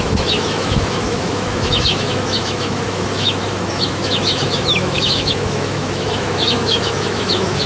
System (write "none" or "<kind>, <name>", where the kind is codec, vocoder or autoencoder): autoencoder, DAC-VAE